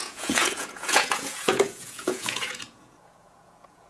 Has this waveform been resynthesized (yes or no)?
yes